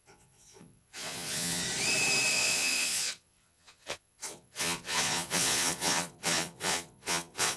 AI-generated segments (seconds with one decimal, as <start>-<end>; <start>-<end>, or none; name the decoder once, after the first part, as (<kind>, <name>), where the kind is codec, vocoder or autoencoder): 0.0-1.6 (vocoder, Vocos); 2.3-7.6